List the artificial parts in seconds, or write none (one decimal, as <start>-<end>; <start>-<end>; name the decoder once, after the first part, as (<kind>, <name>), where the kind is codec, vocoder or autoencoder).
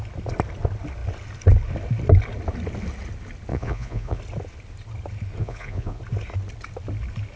3.5-4.2 (vocoder, Vocos); 5.4-6.0